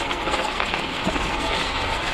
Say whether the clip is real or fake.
fake